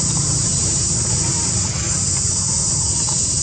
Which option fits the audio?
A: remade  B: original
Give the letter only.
B